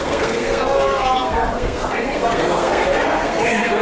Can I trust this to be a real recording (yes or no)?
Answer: no